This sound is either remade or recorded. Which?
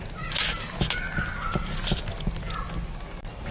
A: recorded